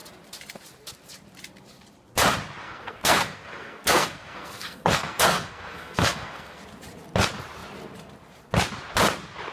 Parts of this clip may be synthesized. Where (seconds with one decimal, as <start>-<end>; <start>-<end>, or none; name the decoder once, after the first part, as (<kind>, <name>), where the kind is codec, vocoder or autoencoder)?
2.6-6.6 (codec, SNAC)